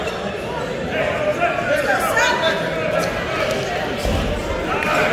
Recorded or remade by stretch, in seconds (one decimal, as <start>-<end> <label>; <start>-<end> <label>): 0.0-5.1 recorded